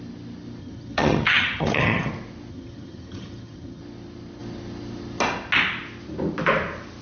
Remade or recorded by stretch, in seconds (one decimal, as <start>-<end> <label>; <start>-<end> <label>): 0.0-0.6 recorded; 0.6-2.1 remade; 2.1-2.5 recorded; 2.5-3.8 remade; 3.8-7.0 recorded